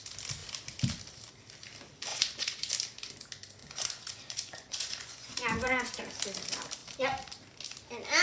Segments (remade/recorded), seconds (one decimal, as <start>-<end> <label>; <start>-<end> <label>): 0.0-2.1 recorded; 2.1-2.7 remade; 2.7-3.6 recorded; 3.6-6.0 remade; 6.0-8.2 recorded